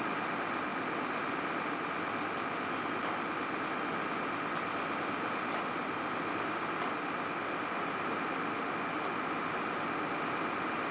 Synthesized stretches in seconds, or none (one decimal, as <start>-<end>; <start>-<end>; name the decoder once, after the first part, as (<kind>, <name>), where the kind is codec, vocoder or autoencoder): none